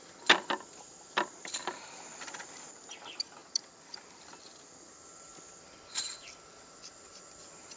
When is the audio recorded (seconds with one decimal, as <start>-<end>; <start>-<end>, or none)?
0.0-7.8